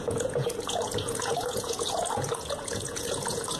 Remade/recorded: remade